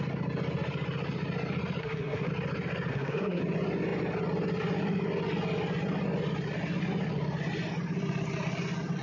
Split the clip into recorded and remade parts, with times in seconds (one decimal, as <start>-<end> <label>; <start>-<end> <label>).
0.0-1.8 recorded; 1.8-2.3 remade; 2.3-2.9 recorded; 2.9-3.4 remade; 3.4-9.0 recorded